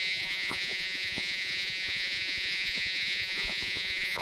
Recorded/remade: remade